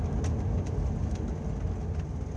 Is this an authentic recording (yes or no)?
yes